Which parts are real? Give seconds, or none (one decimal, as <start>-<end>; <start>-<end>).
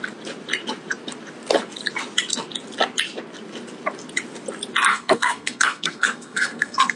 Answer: 0.0-4.9